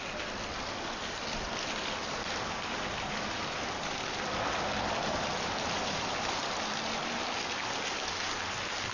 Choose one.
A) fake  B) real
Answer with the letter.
B